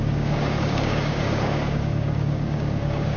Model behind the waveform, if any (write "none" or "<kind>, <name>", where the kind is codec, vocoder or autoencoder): codec, DAC